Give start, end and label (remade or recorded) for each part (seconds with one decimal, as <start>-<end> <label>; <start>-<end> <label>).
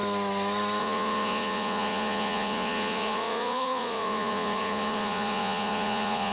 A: 0.0-0.8 recorded; 0.8-6.3 remade